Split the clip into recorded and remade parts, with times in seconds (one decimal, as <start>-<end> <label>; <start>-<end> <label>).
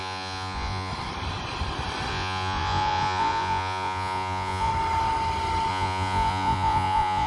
0.0-0.9 remade; 0.9-2.1 recorded; 2.1-4.7 remade; 4.7-5.7 recorded; 5.7-7.3 remade